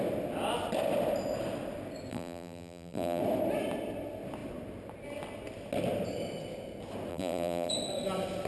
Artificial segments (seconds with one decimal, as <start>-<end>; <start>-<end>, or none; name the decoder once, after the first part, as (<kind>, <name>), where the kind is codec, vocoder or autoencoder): 2.1-3.2 (vocoder, BigVGAN v2); 7.1-7.7